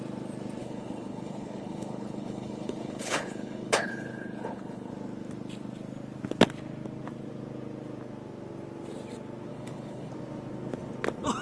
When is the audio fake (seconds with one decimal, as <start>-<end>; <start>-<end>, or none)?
0.6-4.9; 9.5-10.1